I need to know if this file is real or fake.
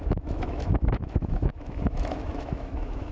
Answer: fake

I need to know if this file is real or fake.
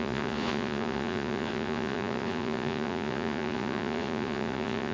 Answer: fake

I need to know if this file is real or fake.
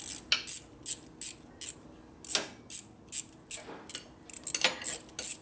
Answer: real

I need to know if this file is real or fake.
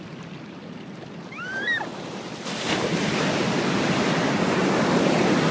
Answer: real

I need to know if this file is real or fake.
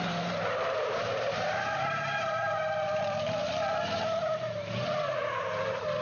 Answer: fake